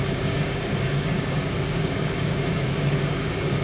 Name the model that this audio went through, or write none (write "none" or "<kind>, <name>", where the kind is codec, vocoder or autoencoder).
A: codec, DAC